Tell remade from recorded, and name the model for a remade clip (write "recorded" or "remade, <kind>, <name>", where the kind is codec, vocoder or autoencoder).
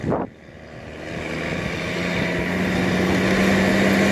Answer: recorded